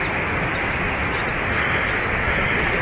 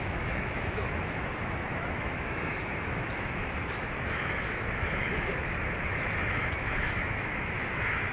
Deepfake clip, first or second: second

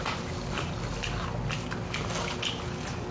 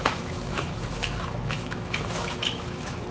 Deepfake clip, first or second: second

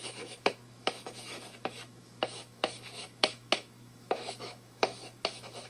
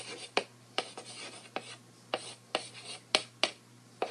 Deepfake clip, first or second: first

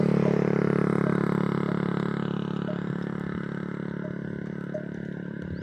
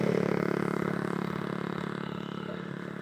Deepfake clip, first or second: second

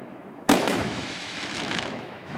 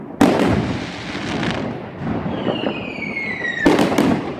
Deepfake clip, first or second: first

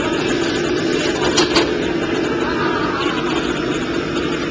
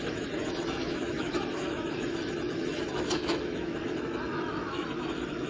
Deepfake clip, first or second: second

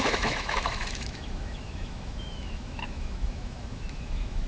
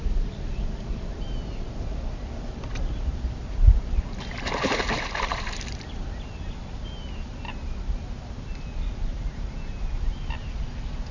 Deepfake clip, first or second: first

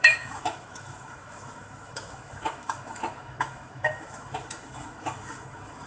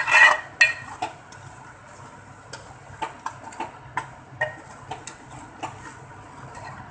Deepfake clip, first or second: first